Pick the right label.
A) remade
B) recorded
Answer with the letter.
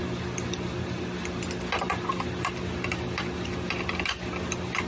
B